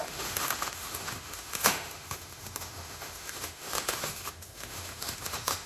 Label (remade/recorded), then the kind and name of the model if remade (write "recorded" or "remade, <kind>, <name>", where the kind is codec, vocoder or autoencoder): remade, autoencoder, DAC-VAE